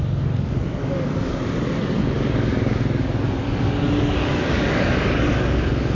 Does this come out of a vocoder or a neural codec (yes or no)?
yes